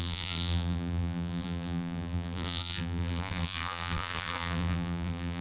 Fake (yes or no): yes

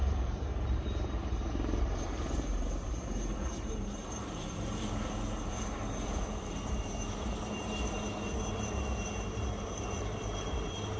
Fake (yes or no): yes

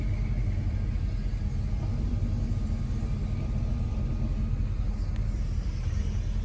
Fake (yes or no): no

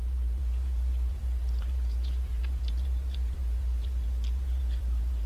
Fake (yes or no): yes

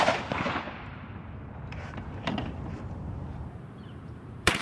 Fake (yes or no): yes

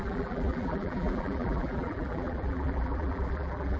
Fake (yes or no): yes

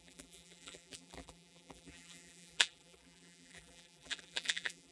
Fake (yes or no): yes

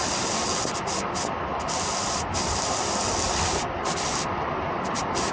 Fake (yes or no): no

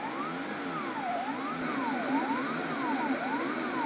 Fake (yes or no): no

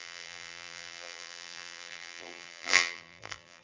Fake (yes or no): yes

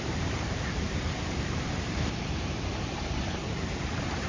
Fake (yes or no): yes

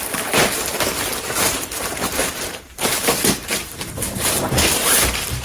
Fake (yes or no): yes